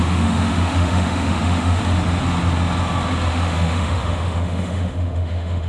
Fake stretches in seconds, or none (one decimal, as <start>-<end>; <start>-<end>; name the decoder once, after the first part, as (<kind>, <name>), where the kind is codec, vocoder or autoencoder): 0.0-1.8 (autoencoder, DAC-VAE); 3.3-5.7